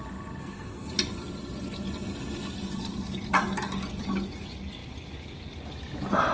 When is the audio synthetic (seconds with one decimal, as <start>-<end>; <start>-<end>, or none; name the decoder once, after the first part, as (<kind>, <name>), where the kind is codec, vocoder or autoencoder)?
0.4-0.9 (codec, SNAC)